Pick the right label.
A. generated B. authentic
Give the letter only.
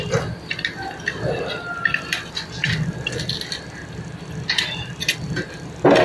B